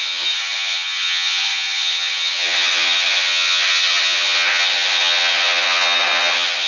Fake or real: fake